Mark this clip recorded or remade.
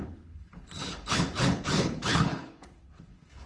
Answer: remade